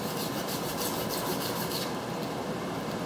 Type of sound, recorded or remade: remade